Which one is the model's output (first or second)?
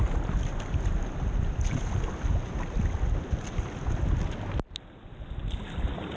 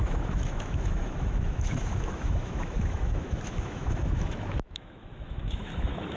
second